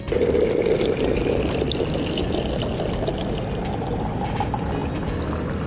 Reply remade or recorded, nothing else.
recorded